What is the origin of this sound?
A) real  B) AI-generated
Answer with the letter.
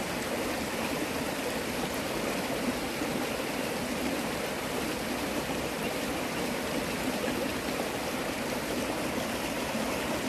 A